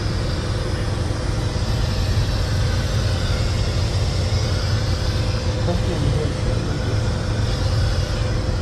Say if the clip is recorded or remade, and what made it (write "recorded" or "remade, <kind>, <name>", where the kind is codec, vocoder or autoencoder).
recorded